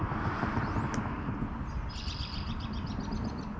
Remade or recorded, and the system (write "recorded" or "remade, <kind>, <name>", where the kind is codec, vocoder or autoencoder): recorded